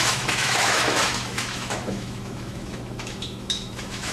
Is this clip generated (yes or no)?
yes